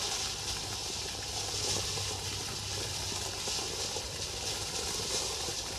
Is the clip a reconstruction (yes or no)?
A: no